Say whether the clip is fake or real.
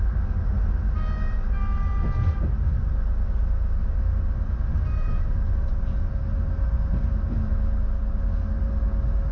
real